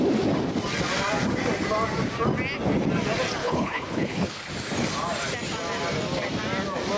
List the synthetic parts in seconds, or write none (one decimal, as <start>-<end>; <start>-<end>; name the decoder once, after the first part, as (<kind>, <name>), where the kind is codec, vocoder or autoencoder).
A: 3.4-4.5 (codec, HILCodec)